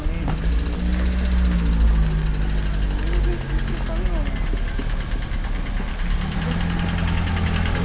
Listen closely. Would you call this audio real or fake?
real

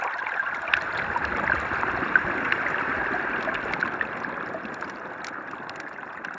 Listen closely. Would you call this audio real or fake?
real